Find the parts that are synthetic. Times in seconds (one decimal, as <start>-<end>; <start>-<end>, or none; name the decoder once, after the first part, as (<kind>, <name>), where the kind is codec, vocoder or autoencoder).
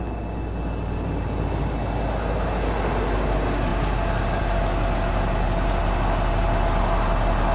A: none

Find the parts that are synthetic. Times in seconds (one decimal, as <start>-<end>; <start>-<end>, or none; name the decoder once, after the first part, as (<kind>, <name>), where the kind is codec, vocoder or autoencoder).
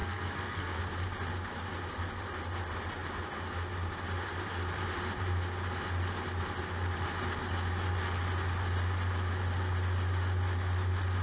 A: 0.0-0.8 (codec, SNAC)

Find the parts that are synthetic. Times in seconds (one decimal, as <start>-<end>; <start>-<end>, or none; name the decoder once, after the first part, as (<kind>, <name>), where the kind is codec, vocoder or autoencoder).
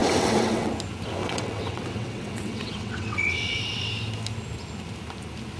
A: 0.0-0.7 (vocoder, WaveNeXt); 1.2-3.9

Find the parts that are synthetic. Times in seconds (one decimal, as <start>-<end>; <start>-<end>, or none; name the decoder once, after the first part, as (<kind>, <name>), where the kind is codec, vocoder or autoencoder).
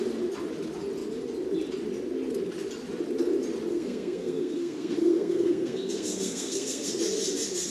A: 3.7-6.9 (codec, SNAC)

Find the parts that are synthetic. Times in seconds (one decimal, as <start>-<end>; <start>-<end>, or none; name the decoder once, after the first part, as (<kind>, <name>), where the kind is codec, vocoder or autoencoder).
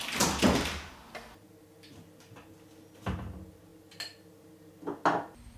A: none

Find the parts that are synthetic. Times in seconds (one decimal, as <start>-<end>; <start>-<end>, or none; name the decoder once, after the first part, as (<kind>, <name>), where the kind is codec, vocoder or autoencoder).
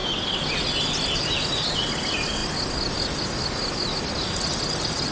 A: none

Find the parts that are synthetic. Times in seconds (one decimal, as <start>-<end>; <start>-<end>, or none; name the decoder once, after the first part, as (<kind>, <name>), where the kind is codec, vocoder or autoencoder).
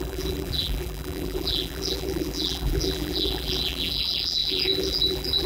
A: 0.0-5.5 (vocoder, BigVGAN v2)